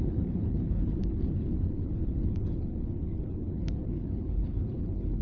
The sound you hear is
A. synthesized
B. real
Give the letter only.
A